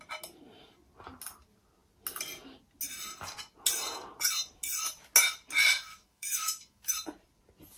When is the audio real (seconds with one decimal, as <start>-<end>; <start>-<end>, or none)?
0.0-5.9; 6.9-7.8